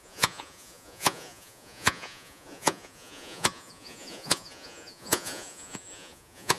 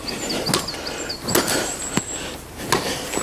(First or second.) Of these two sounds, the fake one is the first